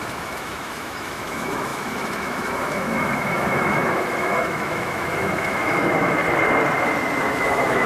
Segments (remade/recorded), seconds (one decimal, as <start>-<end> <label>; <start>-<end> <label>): 0.0-6.2 remade; 6.2-7.2 recorded; 7.2-7.9 remade